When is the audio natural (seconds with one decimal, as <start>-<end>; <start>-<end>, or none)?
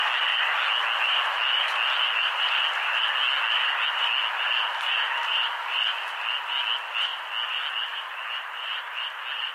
0.0-9.5